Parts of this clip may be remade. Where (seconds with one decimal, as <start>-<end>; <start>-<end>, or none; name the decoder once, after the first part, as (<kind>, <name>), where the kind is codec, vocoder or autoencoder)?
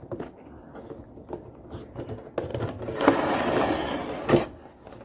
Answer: none